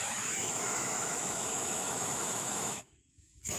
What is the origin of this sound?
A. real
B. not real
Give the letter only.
B